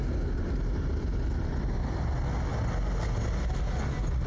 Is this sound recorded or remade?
recorded